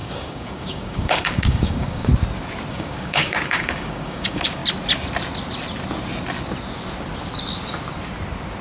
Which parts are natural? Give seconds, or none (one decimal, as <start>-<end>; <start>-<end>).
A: 2.1-2.7; 4.6-8.6